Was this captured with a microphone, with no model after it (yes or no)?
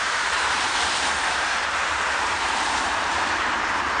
no